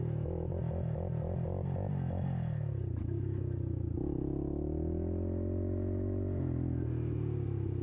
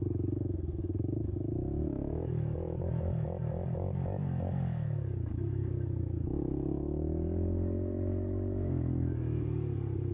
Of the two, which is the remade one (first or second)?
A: second